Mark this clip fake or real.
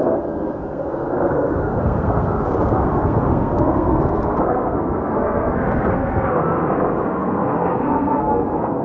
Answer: fake